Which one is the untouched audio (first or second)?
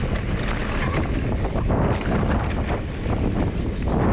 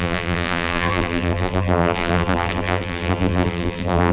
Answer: first